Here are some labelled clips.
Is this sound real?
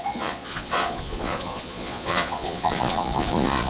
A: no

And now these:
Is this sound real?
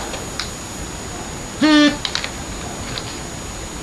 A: yes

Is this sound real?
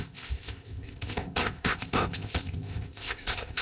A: no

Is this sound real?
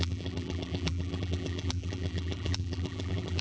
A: no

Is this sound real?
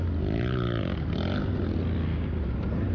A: yes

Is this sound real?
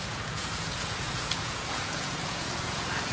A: no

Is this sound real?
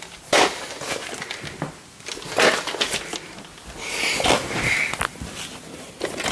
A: yes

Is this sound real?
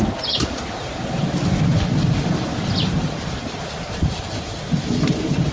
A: yes